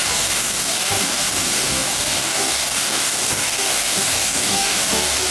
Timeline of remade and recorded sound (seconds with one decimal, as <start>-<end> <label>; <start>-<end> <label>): 0.0-5.3 remade